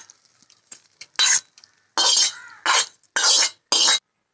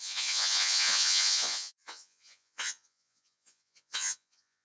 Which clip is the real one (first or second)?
first